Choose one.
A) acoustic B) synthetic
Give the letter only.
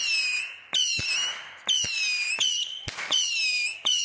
A